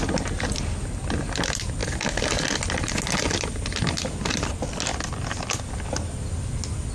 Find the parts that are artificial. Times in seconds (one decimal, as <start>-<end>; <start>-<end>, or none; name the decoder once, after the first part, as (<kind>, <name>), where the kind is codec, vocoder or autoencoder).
none